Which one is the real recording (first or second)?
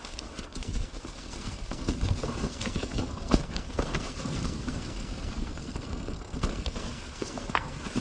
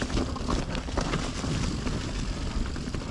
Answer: second